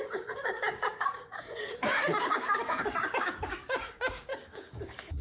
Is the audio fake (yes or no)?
yes